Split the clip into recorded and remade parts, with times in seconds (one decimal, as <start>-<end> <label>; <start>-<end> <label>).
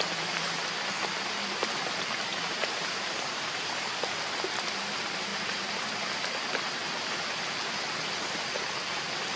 0.0-2.3 recorded; 2.3-3.9 remade; 3.9-5.3 recorded; 5.3-5.9 remade; 5.9-6.8 recorded; 6.8-7.4 remade; 7.4-9.4 recorded